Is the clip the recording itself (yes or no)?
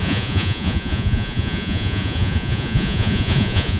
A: no